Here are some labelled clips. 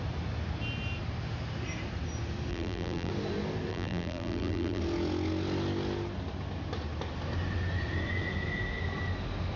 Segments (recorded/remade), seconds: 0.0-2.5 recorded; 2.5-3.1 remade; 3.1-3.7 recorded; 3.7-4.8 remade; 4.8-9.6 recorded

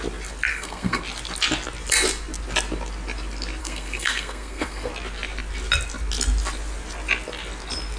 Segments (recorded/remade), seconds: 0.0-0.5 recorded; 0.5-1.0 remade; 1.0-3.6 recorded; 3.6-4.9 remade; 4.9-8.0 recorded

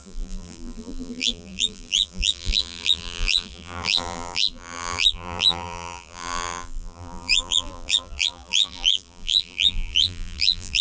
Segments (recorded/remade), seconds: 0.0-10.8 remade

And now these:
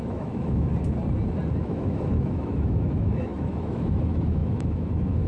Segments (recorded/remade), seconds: 0.0-0.7 remade; 0.7-1.6 recorded; 1.6-5.3 remade

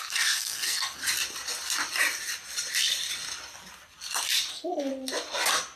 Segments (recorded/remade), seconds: 0.0-1.0 remade; 1.0-4.5 recorded; 4.5-4.9 remade; 4.9-5.8 recorded